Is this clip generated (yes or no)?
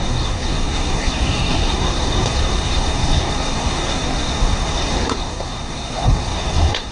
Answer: yes